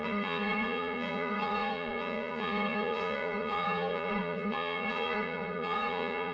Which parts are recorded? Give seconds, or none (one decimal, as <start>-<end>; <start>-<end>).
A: none